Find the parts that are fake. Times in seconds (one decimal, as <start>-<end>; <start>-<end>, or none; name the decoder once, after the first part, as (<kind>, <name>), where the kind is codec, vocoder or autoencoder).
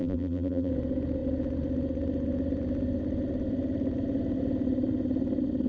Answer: 0.0-0.7 (vocoder, BigVGAN v2)